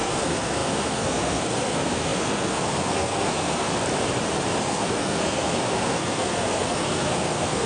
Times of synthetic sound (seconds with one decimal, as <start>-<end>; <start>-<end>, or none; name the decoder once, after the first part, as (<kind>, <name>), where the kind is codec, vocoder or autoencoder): 0.0-3.7 (codec, SNAC); 4.6-7.7